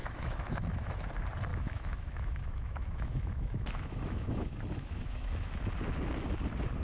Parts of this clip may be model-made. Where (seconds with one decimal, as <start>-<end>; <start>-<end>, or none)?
0.0-1.1; 1.5-5.6